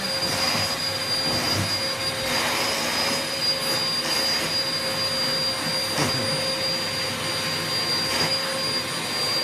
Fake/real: real